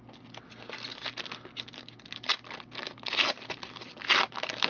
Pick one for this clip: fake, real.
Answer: real